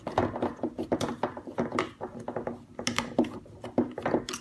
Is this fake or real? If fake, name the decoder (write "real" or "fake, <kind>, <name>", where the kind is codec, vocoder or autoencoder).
real